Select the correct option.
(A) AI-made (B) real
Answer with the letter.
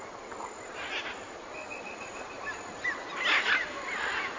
B